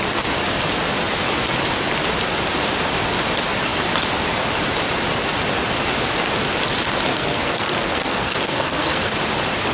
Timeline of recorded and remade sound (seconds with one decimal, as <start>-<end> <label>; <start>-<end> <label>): 0.0-7.1 recorded; 7.1-9.1 remade; 9.1-9.7 recorded